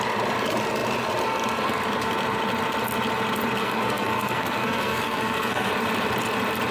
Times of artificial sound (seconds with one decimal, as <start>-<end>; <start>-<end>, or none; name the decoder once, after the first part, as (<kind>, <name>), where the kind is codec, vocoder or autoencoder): 3.6-5.7 (codec, SNAC)